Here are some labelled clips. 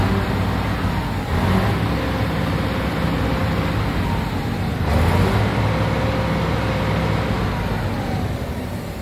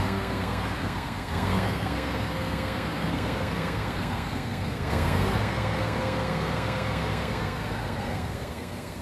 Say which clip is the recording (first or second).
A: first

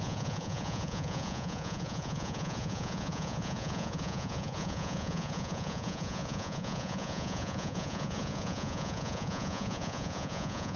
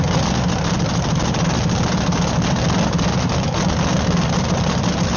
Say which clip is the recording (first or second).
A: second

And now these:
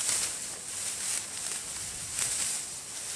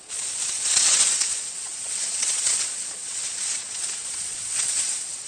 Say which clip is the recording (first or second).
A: first